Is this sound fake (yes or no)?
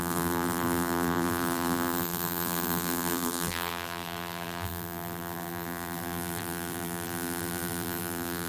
yes